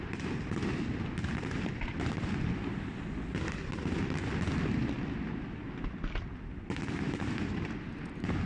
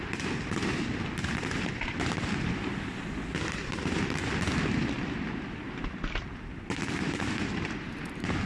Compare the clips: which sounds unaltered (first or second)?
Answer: first